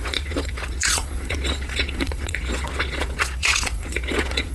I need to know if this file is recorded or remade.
remade